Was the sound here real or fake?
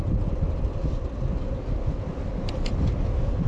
real